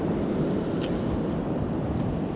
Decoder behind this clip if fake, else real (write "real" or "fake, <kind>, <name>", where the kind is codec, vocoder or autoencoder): real